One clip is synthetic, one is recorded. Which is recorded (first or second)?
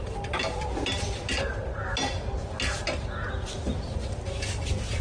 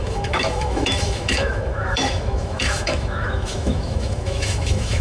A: first